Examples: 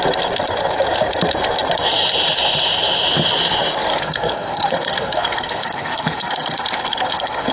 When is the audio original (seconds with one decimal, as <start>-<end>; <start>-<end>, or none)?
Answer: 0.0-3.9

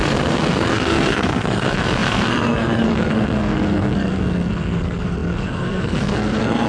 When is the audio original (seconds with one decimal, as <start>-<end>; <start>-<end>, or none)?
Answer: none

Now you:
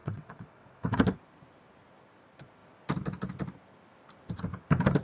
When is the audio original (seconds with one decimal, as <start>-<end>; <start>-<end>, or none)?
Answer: 1.2-5.0

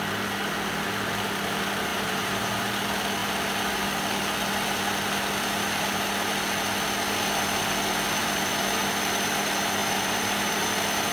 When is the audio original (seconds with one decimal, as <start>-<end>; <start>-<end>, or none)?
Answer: 0.0-1.9; 2.5-8.2; 8.9-9.8; 10.6-11.1

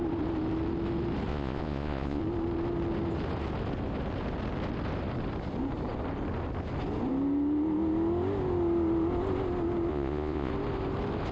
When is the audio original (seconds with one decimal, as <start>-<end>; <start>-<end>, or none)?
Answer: 0.0-1.3; 2.2-9.9; 10.5-11.3

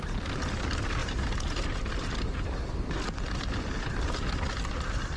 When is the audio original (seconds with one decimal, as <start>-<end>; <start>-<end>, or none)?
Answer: 0.0-1.0; 3.0-5.2

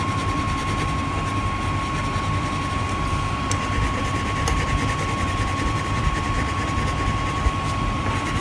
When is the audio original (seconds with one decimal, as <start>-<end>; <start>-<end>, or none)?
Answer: 1.3-2.2

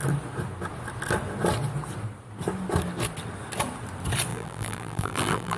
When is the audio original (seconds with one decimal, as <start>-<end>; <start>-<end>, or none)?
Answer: 0.0-4.3